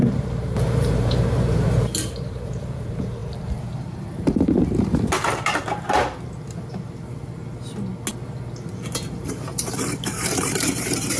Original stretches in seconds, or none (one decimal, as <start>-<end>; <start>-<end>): 7.4-9.1